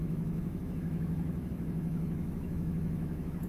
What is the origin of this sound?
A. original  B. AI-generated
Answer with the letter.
B